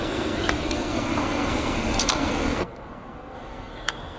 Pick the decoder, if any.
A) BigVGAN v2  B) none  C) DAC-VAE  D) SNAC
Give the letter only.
D